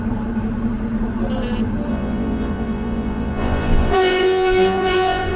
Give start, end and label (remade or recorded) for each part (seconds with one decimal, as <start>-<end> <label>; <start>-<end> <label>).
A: 0.0-1.9 recorded; 1.9-5.4 remade

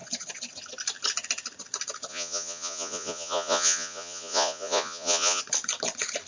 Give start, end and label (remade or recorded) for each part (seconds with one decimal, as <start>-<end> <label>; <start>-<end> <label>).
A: 0.0-2.1 recorded; 2.1-5.4 remade; 5.4-6.3 recorded

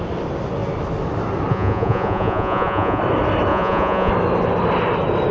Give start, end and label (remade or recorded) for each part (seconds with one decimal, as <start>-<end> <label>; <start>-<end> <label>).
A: 0.0-1.5 recorded; 1.5-3.0 remade; 3.0-3.5 recorded; 3.5-4.1 remade; 4.1-5.3 recorded

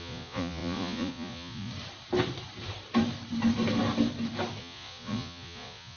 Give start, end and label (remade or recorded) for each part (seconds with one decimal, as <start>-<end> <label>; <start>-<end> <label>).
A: 0.0-1.7 remade; 1.7-4.6 recorded; 4.6-6.0 remade

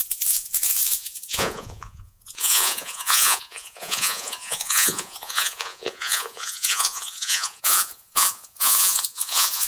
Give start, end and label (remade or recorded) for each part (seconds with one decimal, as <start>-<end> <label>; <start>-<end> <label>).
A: 0.0-9.7 remade

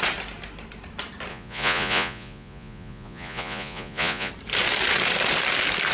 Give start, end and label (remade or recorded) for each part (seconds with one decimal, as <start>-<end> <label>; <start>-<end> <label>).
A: 0.0-1.3 recorded; 1.3-4.3 remade; 4.3-5.9 recorded